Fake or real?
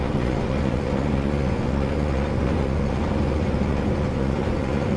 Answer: fake